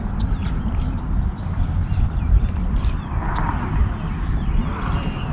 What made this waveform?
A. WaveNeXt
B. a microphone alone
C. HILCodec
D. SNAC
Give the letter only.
B